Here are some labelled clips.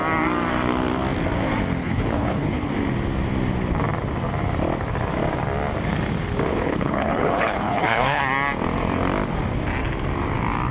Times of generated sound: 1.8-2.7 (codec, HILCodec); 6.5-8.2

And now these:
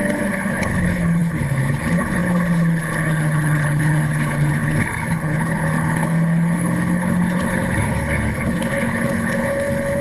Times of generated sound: 0.0-10.0 (codec, HILCodec)

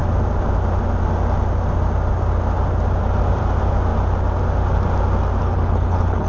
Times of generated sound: 5.4-6.3 (codec, HILCodec)